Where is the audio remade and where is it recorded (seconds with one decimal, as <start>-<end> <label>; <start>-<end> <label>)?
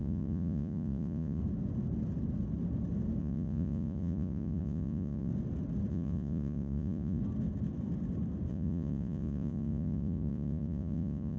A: 0.0-1.4 remade; 1.4-3.2 recorded; 3.2-5.3 remade; 5.3-5.9 recorded; 5.9-7.2 remade; 7.2-8.5 recorded; 8.5-11.4 remade